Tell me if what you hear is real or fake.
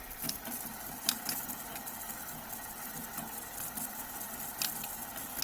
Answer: real